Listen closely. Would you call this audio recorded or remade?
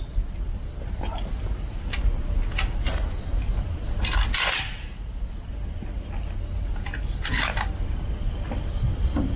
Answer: recorded